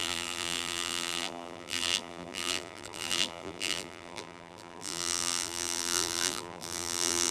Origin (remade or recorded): remade